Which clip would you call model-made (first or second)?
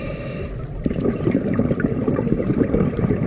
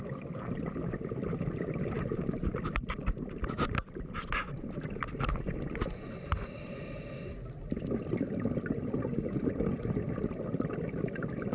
first